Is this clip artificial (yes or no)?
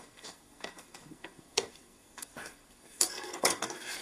yes